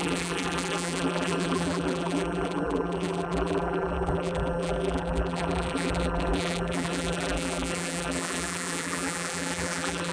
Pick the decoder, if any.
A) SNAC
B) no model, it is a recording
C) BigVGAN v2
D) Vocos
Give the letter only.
C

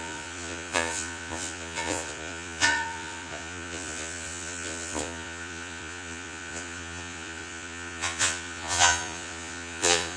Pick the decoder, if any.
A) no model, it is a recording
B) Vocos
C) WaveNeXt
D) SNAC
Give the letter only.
B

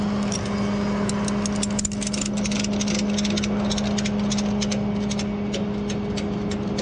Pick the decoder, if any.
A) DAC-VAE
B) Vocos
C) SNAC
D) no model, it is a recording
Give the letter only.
D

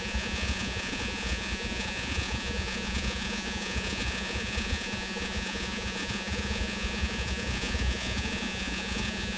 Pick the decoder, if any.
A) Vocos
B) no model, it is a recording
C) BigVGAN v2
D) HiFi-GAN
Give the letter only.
A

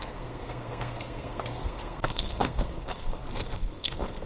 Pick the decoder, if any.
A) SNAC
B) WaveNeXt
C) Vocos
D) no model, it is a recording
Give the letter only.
A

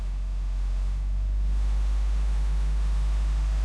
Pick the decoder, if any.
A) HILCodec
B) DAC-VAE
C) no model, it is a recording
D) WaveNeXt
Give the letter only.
B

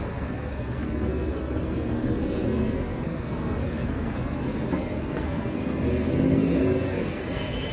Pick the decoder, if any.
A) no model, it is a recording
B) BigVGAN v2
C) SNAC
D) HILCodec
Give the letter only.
C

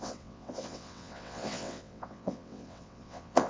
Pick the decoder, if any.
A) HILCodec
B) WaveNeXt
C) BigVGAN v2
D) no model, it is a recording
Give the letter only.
B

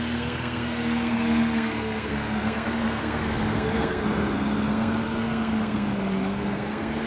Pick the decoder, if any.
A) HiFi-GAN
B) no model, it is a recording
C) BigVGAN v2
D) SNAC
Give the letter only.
D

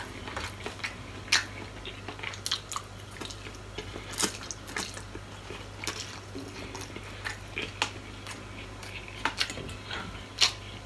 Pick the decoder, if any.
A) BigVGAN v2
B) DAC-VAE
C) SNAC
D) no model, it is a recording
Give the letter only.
D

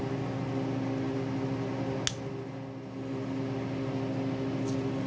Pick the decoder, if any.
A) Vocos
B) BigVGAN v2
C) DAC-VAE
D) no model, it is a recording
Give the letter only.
D